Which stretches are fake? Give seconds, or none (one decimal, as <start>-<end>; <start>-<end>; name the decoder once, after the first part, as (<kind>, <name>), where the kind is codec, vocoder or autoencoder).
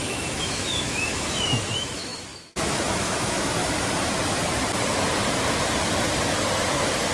0.0-3.5 (autoencoder, DAC-VAE)